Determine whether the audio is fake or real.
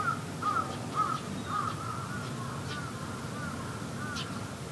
real